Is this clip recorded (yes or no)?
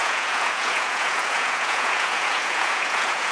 no